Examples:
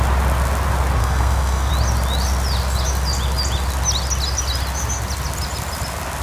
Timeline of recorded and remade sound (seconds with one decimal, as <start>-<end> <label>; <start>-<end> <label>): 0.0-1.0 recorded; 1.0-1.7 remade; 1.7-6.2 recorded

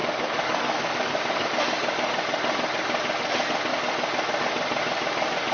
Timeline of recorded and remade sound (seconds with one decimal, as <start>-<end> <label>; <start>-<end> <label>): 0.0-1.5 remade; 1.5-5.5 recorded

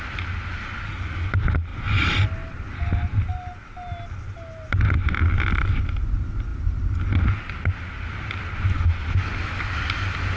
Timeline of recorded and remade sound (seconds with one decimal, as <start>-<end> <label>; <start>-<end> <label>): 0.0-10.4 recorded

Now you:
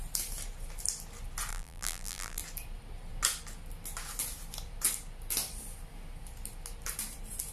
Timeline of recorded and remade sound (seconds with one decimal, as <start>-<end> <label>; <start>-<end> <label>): 0.0-1.5 recorded; 1.5-2.4 remade; 2.4-7.5 recorded

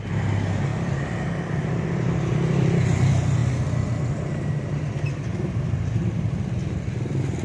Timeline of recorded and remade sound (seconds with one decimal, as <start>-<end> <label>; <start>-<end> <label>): 0.0-3.4 remade; 3.4-4.5 recorded; 4.5-7.4 remade